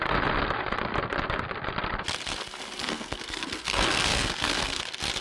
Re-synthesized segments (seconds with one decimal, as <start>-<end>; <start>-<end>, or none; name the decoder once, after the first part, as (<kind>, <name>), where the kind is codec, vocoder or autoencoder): 2.8-4.8 (codec, SNAC)